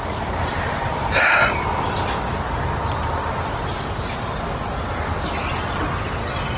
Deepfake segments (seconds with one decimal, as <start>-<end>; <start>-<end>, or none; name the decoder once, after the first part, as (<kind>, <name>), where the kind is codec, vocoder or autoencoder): none